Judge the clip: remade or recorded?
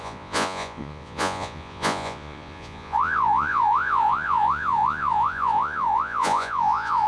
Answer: remade